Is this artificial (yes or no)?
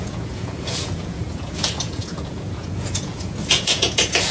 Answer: yes